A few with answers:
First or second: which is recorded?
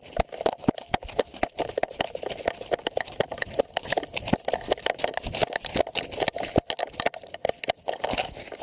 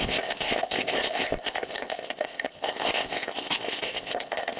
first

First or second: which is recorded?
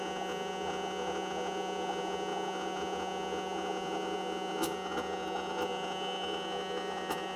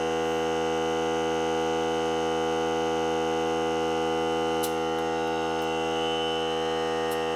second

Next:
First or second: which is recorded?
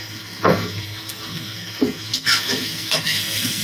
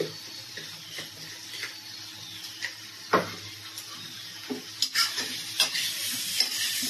second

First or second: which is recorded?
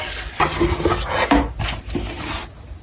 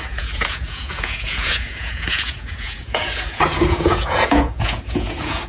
first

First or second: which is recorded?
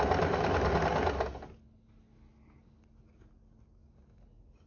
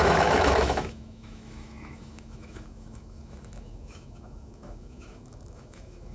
first